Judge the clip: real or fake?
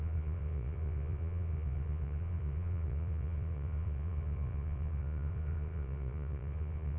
fake